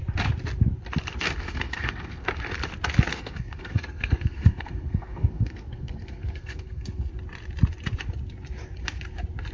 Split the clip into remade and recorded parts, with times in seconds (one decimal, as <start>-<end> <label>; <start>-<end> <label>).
0.0-1.4 recorded; 1.4-2.3 remade; 2.3-3.1 recorded; 3.1-7.1 remade; 7.1-9.5 recorded